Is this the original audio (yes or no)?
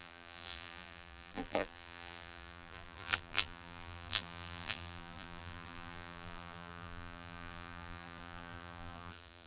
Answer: no